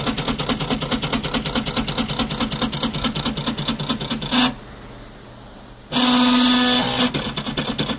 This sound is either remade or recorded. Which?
recorded